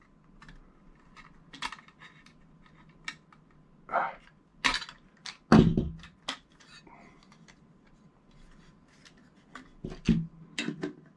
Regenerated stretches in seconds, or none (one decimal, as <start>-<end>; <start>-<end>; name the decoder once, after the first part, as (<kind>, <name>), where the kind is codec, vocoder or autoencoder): none